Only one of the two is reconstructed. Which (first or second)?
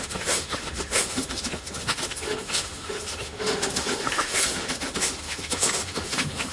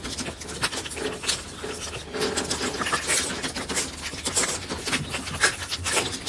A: first